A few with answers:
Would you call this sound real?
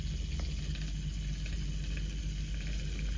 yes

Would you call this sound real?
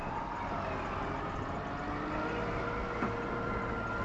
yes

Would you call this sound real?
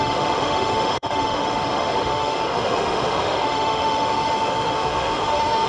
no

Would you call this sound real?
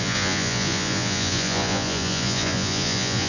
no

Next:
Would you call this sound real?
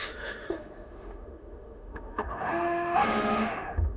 no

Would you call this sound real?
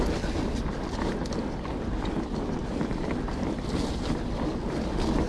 yes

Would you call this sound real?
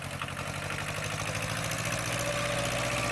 yes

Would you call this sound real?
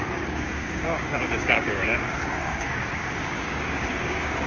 no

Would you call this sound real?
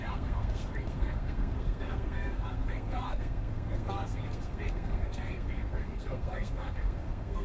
no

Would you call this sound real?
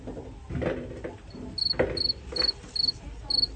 yes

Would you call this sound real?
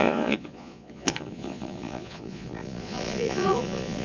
no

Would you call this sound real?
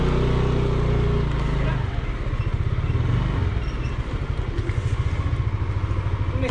yes